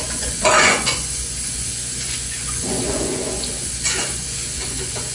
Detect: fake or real fake